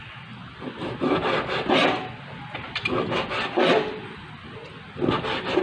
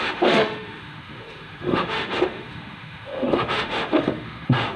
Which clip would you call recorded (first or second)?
first